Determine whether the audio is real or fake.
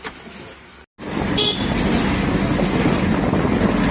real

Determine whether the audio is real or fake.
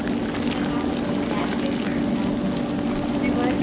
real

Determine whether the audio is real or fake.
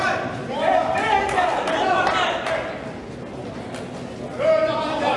real